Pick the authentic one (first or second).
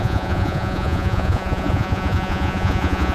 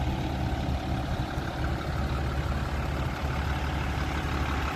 second